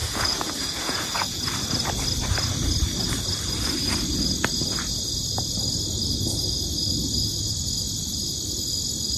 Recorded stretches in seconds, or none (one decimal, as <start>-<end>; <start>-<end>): 1.4-9.2